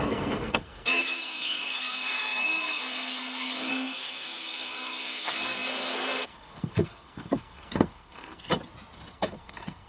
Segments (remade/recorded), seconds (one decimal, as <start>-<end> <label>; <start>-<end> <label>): 0.0-8.5 remade; 8.5-9.1 recorded; 9.1-9.9 remade